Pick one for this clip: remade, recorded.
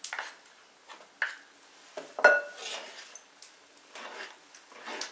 recorded